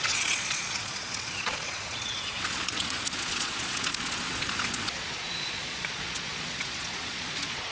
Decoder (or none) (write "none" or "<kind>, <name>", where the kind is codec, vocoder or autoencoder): vocoder, Vocos